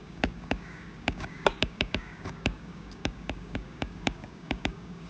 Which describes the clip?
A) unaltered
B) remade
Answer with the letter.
B